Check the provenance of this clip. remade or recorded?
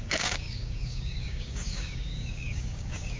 remade